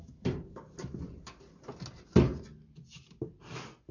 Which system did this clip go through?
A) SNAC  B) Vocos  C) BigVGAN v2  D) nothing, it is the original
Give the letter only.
D